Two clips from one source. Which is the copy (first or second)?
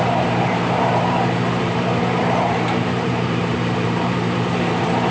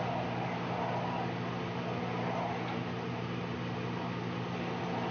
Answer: first